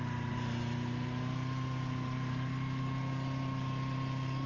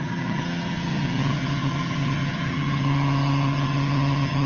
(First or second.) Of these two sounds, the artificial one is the second